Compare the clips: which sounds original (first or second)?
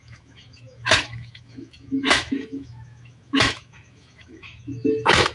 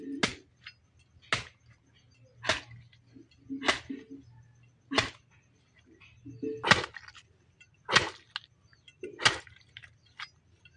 second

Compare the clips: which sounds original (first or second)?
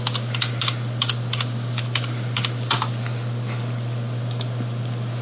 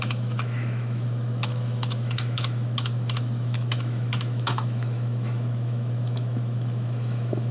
first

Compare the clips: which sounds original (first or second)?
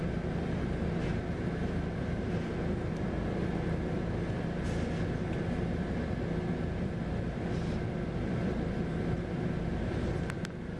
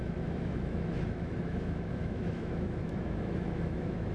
first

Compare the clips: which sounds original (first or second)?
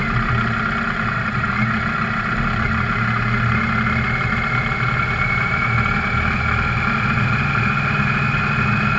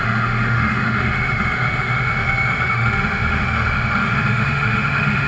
first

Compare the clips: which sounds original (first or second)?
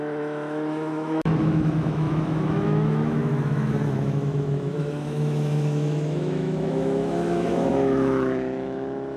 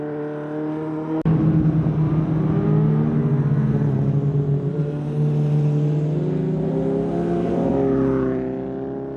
second